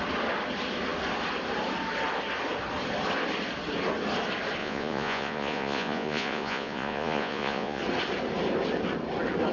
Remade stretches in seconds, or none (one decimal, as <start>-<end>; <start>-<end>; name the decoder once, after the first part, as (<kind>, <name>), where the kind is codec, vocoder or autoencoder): 4.6-7.8 (vocoder, Vocos)